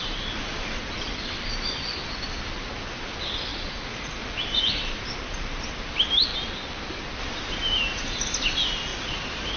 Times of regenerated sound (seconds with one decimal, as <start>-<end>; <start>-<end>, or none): 3.5-4.2